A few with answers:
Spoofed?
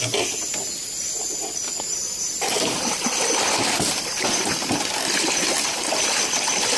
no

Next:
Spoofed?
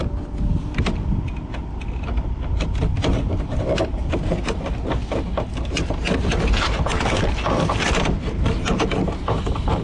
no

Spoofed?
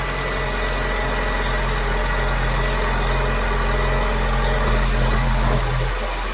no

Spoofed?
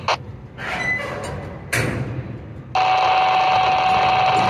no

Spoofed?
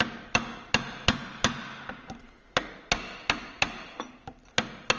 no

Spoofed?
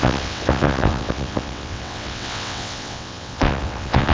yes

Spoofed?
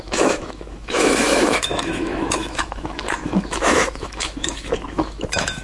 yes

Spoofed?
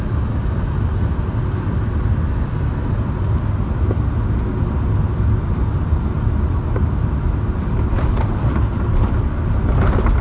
no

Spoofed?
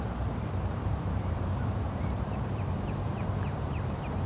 yes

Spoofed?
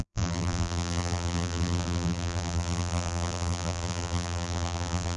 yes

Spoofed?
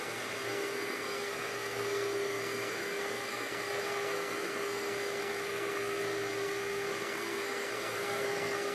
yes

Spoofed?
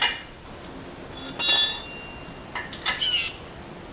no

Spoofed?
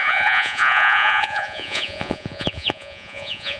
yes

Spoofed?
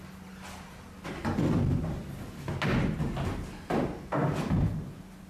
no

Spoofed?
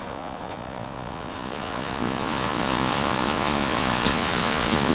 yes